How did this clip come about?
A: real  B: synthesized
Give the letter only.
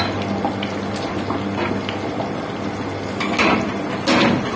A